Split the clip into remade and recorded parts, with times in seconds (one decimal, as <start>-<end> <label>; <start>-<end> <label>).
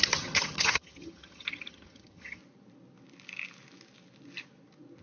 0.0-2.4 remade; 2.4-5.0 recorded